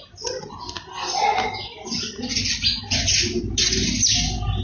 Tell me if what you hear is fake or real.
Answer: real